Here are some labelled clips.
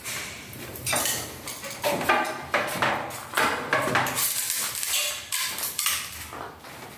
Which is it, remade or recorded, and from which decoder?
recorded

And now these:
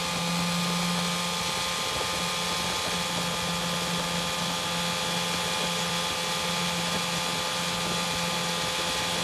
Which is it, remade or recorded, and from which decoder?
recorded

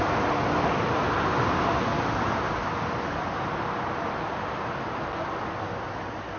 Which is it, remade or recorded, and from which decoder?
recorded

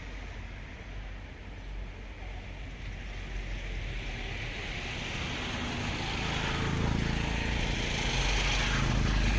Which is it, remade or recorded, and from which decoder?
recorded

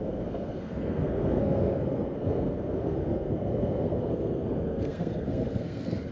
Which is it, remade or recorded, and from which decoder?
remade, codec, SNAC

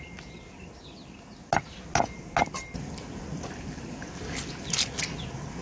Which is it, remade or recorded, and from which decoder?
recorded